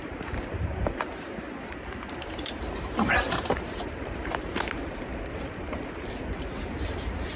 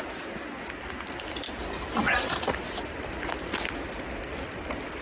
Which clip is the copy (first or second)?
first